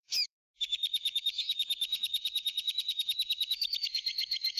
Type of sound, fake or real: fake